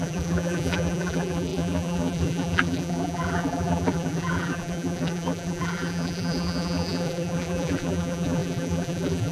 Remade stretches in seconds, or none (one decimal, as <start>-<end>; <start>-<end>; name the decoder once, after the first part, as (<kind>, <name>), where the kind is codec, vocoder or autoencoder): 0.0-9.3 (vocoder, BigVGAN v2)